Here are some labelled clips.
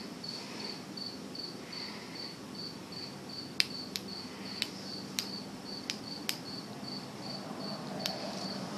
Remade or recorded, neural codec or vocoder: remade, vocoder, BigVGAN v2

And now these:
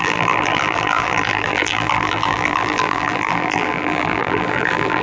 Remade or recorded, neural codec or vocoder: remade, vocoder, BigVGAN v2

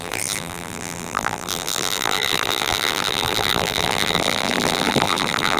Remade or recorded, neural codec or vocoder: remade, vocoder, BigVGAN v2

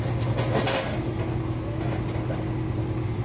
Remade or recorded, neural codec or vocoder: recorded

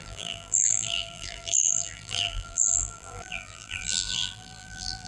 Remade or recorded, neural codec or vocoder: remade, vocoder, BigVGAN v2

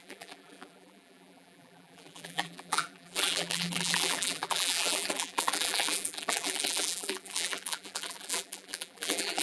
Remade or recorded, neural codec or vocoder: remade, vocoder, BigVGAN v2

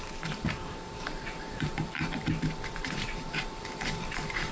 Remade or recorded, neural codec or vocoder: remade, vocoder, BigVGAN v2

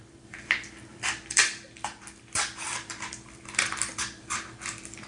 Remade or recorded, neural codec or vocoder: remade, vocoder, BigVGAN v2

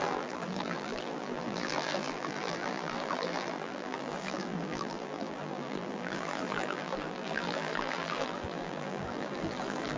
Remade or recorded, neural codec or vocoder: remade, vocoder, BigVGAN v2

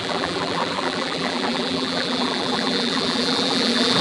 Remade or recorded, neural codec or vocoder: remade, vocoder, BigVGAN v2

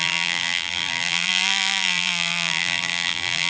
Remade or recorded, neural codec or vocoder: remade, vocoder, BigVGAN v2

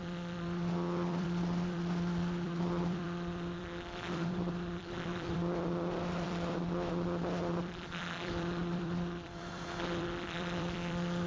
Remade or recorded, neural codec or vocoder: remade, vocoder, BigVGAN v2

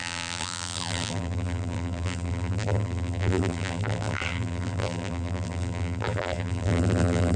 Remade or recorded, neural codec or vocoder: remade, vocoder, BigVGAN v2